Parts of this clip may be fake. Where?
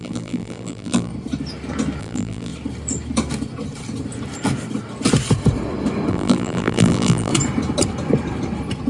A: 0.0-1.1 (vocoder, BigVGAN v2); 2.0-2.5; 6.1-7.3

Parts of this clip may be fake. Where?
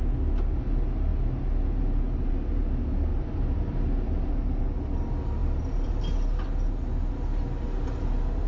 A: 3.1-4.6 (vocoder, BigVGAN v2); 5.4-5.9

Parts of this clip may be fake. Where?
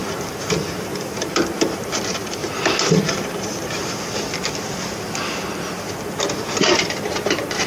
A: 0.0-2.4 (vocoder, BigVGAN v2); 3.0-3.8; 7.1-7.7